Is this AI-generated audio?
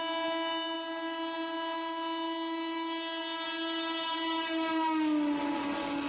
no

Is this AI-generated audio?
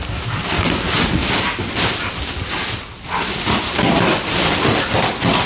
no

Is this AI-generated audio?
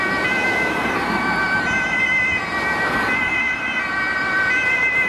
no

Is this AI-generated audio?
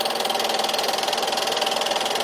no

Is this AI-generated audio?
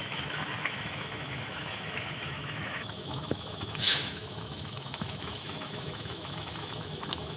yes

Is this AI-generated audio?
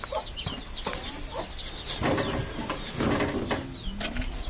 no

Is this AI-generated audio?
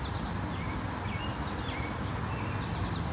no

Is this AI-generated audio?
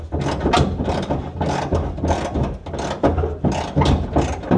no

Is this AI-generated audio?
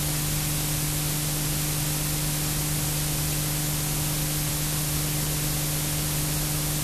no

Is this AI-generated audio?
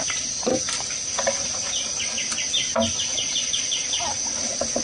no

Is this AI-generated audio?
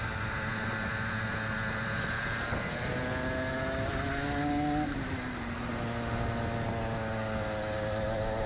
no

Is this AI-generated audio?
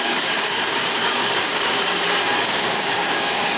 yes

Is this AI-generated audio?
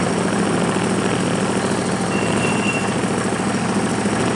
no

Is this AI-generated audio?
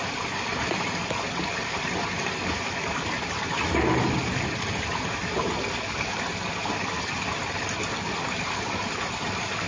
no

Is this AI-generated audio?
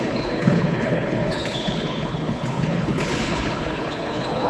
yes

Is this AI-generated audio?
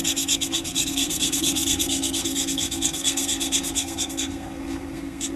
yes